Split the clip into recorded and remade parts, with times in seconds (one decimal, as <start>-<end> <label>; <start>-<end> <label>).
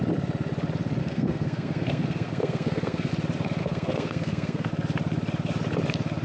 0.0-1.0 recorded; 1.0-3.1 remade; 3.1-3.6 recorded; 3.6-4.7 remade; 4.7-6.2 recorded